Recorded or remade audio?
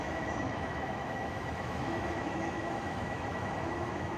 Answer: remade